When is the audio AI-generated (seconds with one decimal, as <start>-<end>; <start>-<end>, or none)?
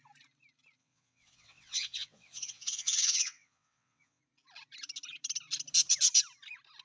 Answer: 0.8-4.2